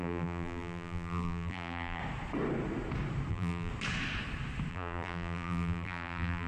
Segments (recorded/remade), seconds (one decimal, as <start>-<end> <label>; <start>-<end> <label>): 0.0-2.0 remade; 2.0-3.3 recorded; 3.3-3.7 remade; 3.7-4.7 recorded; 4.7-6.5 remade